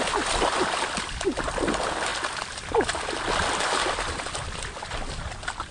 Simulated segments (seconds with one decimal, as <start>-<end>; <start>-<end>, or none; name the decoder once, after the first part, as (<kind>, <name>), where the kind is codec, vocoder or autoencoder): none